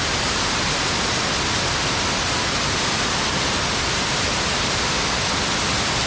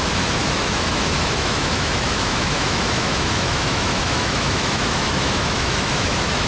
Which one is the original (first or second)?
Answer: first